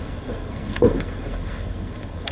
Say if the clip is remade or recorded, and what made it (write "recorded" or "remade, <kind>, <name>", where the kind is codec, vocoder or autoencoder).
remade, codec, SNAC